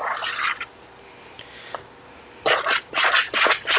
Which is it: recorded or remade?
recorded